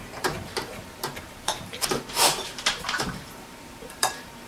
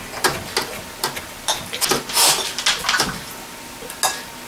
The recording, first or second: second